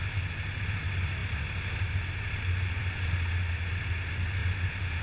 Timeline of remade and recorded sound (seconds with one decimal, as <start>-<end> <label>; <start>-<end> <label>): 0.0-5.0 recorded